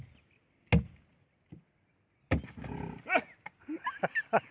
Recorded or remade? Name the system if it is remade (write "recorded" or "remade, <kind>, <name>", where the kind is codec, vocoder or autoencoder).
recorded